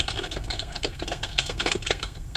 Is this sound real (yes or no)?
no